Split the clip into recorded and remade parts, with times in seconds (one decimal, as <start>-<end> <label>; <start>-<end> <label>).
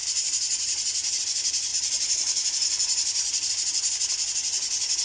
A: 0.0-1.2 remade; 1.2-1.7 recorded; 1.7-3.5 remade; 3.5-5.0 recorded